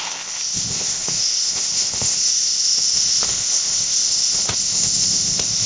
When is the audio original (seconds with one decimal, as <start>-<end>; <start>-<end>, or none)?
none